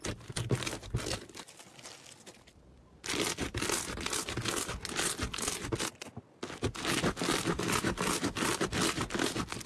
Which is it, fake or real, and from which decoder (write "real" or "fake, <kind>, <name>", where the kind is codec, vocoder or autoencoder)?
real